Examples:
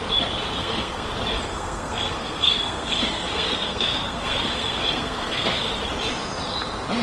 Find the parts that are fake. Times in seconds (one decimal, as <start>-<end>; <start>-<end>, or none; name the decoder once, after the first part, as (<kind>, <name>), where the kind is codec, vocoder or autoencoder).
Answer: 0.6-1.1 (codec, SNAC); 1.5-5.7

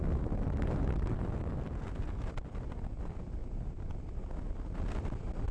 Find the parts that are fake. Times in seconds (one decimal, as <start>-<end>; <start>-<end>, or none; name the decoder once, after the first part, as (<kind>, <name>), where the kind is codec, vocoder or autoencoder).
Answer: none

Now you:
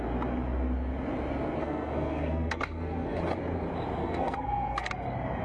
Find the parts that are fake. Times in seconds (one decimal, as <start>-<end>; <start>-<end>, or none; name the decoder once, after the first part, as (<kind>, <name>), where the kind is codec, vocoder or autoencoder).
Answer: 1.6-3.2 (codec, SNAC); 4.0-4.9

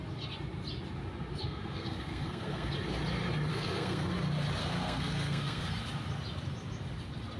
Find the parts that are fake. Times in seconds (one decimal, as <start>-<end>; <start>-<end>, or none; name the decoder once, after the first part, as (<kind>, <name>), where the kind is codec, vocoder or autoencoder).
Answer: 1.3-2.7 (codec, SNAC); 3.5-4.1; 4.6-5.7

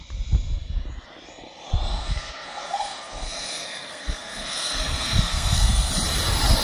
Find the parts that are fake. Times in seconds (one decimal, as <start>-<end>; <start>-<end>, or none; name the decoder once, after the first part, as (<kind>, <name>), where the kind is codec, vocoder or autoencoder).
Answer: 1.9-5.9 (codec, SNAC)

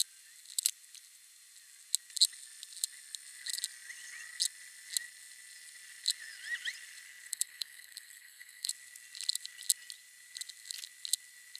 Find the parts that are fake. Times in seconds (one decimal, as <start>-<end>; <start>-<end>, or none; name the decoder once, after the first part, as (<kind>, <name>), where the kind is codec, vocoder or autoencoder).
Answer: 7.3-8.7 (codec, SNAC)

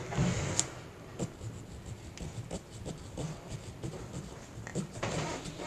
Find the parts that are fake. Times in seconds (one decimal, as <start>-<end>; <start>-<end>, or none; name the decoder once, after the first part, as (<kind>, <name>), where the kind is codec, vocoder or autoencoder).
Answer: none

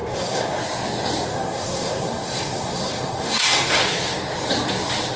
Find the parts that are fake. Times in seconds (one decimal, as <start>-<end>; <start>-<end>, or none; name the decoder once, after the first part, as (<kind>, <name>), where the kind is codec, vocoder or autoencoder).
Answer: 0.0-0.6 (codec, SNAC); 1.3-3.8